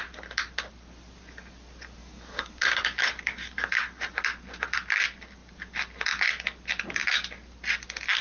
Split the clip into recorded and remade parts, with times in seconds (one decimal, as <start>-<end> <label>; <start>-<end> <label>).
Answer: 0.0-2.0 recorded; 2.0-4.2 remade; 4.2-8.2 recorded